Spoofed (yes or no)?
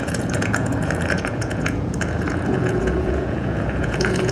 yes